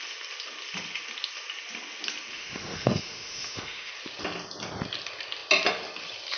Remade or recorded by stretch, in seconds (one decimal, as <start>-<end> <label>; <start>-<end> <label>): 0.0-2.3 recorded; 2.3-3.9 remade; 3.9-6.4 recorded

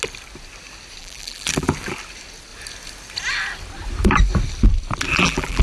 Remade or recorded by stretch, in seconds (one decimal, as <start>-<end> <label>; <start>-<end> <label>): 0.0-1.0 recorded; 1.0-1.7 remade; 1.7-5.1 recorded; 5.1-5.6 remade

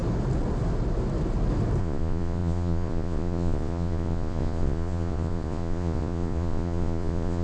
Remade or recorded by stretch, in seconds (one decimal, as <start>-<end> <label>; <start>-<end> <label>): 0.0-1.8 recorded; 1.8-7.4 remade

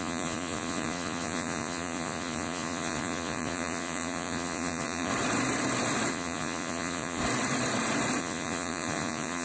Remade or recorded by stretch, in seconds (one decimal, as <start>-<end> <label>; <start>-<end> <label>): 0.0-5.1 remade; 5.1-6.1 recorded; 6.1-7.2 remade; 7.2-8.2 recorded; 8.2-9.4 remade

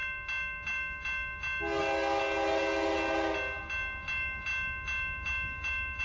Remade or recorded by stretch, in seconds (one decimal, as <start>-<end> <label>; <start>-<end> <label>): 0.0-6.0 recorded